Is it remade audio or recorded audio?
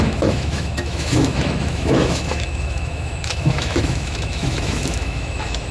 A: remade